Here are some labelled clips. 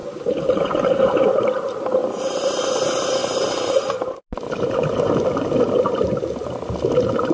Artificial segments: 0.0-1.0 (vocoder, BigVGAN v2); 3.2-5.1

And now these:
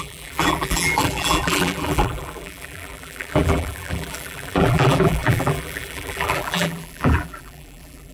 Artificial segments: 0.0-8.1 (vocoder, BigVGAN v2)

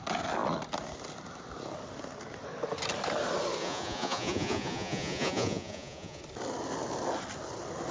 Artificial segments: 3.6-6.2 (vocoder, Vocos)

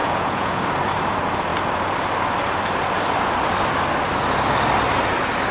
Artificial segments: 0.0-0.6 (vocoder, Vocos)

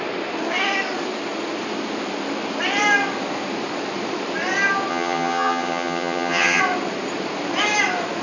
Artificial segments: 4.9-6.6 (vocoder, HiFi-GAN)